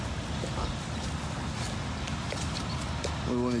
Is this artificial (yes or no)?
no